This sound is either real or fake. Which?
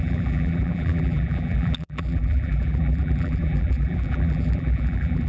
fake